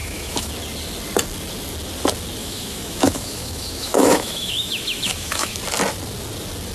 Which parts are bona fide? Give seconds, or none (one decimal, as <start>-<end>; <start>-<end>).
0.5-2.4; 5.5-6.7